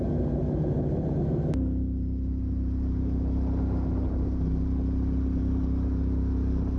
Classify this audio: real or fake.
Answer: real